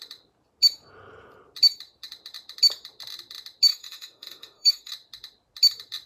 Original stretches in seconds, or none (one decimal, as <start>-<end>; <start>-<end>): 0.0-3.7; 4.9-6.1